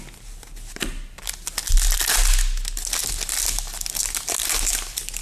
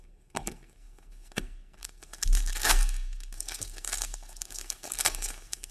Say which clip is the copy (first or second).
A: second